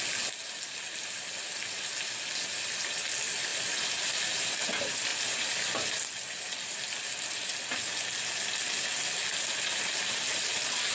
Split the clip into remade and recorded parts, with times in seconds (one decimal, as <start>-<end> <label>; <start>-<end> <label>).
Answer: 0.0-10.9 recorded